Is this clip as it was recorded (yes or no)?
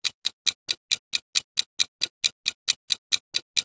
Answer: yes